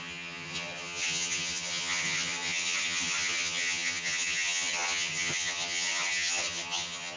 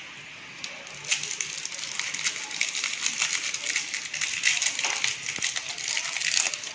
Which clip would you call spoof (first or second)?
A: first